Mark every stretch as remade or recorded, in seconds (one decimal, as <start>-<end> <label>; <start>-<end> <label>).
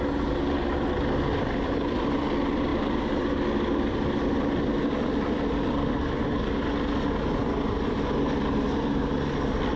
0.0-9.8 recorded